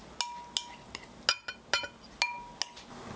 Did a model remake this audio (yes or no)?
no